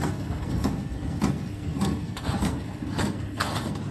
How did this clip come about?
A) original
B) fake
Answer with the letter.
B